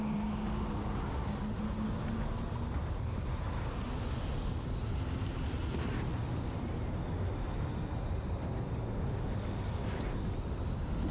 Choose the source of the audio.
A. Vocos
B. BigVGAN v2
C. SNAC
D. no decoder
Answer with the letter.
D